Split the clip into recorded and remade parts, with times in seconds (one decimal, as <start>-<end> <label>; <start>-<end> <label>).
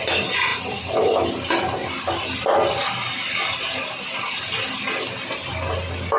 0.0-6.2 recorded